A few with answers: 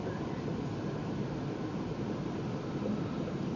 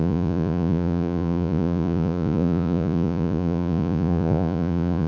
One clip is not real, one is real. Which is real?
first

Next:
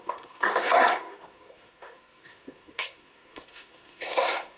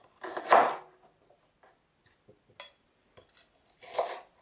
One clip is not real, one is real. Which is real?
second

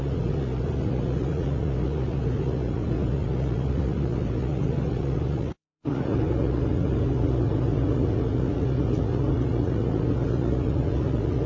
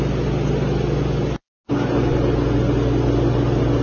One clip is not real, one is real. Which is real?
second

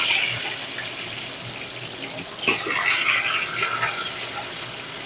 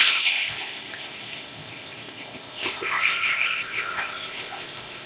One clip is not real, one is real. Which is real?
first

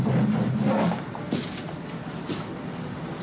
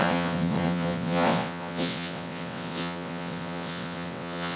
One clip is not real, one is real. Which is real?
first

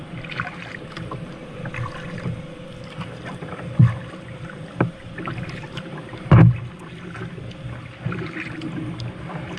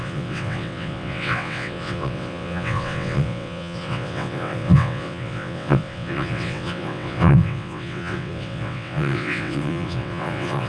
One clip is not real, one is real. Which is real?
first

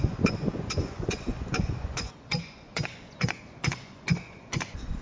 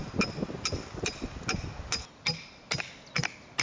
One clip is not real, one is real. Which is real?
second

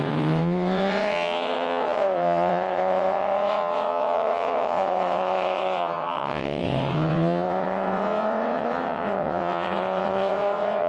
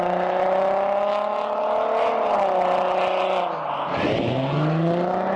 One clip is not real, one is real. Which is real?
second